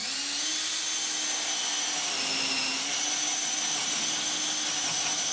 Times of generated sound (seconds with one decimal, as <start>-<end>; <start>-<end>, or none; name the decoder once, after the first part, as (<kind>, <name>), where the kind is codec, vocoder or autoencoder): none